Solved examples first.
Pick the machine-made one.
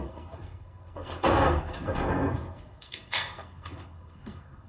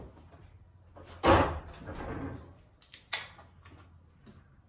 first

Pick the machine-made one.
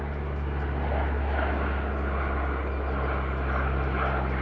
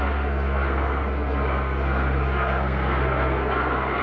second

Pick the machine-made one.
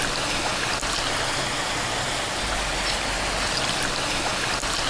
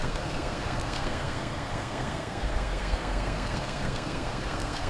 second